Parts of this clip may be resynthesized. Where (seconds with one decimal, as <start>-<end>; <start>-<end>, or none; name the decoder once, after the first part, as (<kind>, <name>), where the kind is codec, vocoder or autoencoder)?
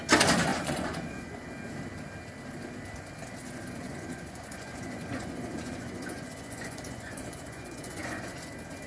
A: 0.5-1.5 (vocoder, Vocos); 3.4-8.5